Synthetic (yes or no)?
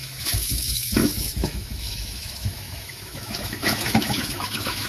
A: yes